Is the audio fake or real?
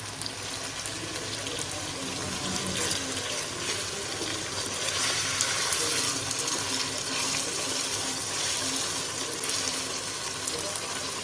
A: real